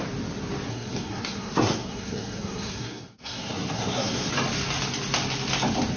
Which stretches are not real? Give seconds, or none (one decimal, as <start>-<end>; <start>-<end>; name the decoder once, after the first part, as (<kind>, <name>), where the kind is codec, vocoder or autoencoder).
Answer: 0.7-4.3 (codec, SNAC)